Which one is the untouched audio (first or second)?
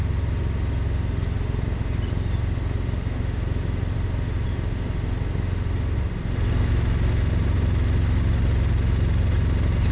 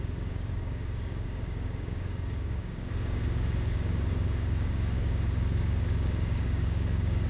first